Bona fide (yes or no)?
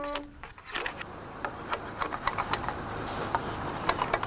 no